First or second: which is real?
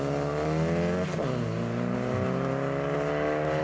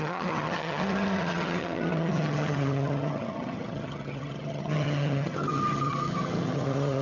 first